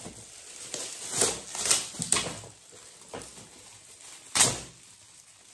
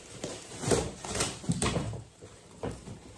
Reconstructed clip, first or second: second